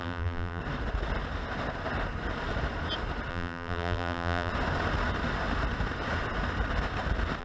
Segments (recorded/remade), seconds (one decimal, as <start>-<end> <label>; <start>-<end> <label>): 0.0-0.6 remade; 0.6-3.3 recorded; 3.3-4.5 remade; 4.5-7.4 recorded